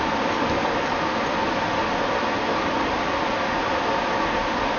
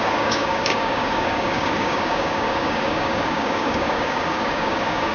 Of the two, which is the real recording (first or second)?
first